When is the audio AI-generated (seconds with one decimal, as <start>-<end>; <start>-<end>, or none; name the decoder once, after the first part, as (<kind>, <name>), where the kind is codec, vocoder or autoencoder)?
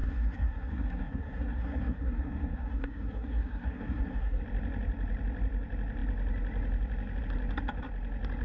0.0-4.4 (codec, SNAC)